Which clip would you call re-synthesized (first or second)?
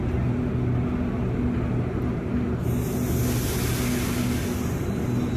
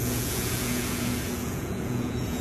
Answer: second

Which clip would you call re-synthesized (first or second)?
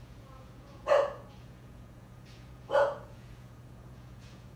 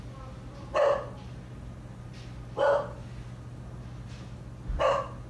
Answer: first